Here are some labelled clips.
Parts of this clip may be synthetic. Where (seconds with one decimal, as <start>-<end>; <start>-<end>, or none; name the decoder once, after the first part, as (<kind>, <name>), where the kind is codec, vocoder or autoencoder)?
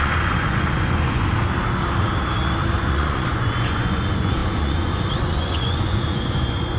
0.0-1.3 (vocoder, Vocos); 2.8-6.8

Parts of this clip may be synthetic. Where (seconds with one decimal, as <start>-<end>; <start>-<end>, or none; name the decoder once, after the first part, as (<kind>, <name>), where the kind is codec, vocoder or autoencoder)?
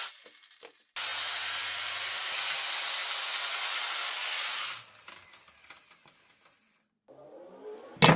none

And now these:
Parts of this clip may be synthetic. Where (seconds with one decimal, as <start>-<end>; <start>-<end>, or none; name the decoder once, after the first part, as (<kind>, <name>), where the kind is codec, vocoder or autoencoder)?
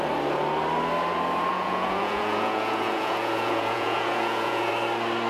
1.5-4.7 (vocoder, Vocos)